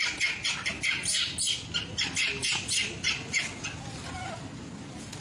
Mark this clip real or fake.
real